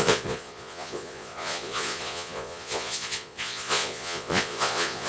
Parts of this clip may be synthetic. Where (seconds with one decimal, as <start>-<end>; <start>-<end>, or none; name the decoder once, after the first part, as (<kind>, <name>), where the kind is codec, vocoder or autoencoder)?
0.0-5.1 (vocoder, Vocos)